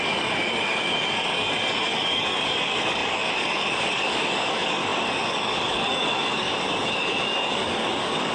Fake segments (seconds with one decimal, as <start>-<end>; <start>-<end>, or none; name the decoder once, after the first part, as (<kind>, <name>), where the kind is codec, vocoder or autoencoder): 0.0-8.3 (codec, DAC)